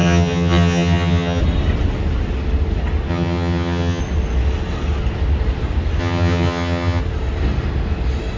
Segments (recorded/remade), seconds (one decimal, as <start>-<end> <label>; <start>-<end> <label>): 0.0-1.4 remade; 1.4-3.1 recorded; 3.1-4.0 remade; 4.0-6.0 recorded; 6.0-7.0 remade; 7.0-8.4 recorded